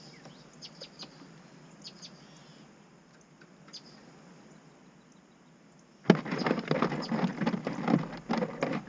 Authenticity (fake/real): real